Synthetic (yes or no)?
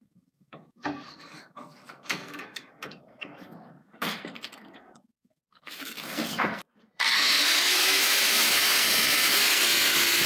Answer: yes